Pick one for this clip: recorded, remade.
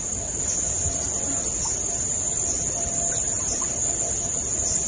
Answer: recorded